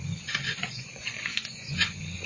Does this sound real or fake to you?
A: fake